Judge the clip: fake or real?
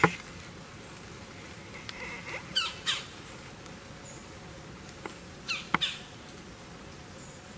real